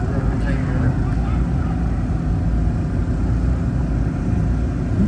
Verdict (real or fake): real